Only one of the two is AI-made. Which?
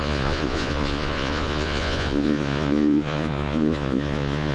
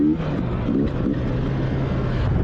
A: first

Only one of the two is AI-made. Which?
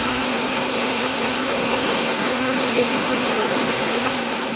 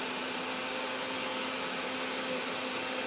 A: first